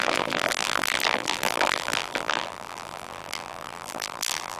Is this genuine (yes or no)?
no